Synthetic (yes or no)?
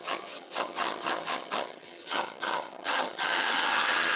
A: yes